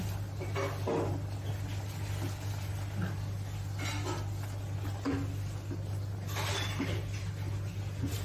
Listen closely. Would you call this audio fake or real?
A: real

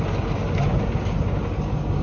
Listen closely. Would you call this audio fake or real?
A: real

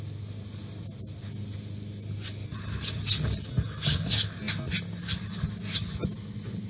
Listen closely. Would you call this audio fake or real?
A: real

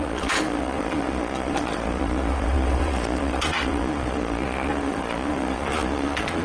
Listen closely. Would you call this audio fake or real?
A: fake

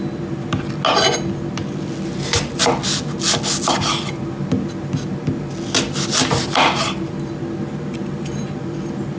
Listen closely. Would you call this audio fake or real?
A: real